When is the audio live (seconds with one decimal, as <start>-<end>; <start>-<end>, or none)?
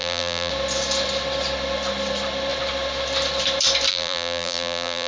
0.5-3.9